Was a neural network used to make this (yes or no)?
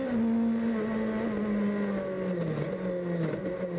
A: no